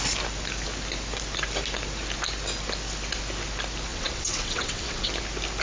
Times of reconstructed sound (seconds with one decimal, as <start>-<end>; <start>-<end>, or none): 3.9-5.1

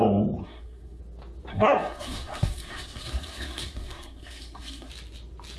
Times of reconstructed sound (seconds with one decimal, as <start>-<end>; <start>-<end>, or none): 0.4-1.0; 1.5-4.9

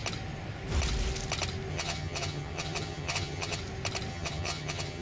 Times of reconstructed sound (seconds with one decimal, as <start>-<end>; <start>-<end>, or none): 1.7-3.6; 4.1-5.0

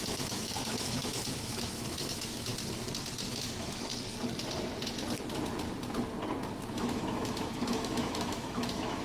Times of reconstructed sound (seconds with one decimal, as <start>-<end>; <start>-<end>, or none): 0.0-2.5; 3.3-3.9; 6.6-9.0

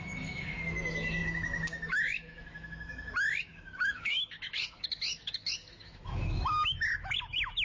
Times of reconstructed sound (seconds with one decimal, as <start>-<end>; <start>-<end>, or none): 0.0-7.6